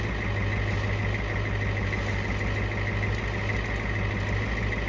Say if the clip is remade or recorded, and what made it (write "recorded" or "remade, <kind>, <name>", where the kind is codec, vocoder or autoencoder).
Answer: recorded